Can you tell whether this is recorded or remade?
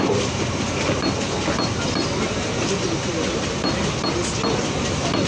recorded